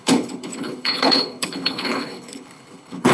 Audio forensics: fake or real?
fake